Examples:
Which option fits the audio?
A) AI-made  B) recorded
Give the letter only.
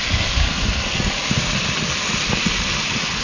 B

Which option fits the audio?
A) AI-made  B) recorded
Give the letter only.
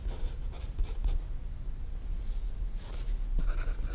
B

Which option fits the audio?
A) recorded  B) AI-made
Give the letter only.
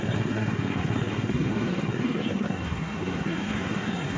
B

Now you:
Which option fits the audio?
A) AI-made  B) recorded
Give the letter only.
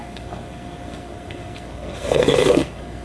A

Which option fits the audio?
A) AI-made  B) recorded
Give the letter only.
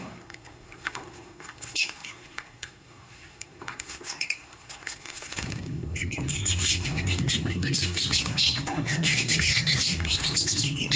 A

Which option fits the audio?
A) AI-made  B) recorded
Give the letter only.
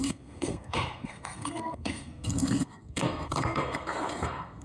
A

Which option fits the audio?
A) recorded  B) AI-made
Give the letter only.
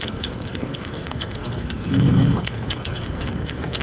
B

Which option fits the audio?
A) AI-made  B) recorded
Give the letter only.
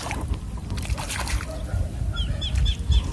B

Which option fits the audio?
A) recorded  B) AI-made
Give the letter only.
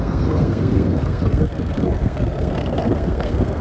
B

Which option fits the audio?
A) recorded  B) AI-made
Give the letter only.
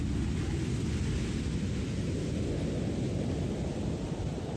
A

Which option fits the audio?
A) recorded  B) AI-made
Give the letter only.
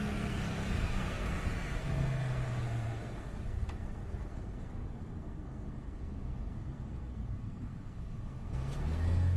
B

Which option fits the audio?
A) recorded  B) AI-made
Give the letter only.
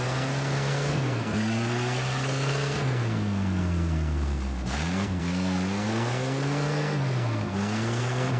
B